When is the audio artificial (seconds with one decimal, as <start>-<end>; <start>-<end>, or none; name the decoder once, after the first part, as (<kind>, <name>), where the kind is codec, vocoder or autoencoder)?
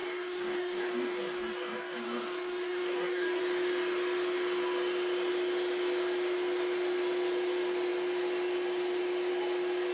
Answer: 0.0-3.4 (codec, DAC)